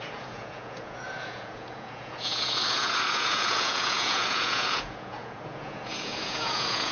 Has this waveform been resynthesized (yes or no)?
yes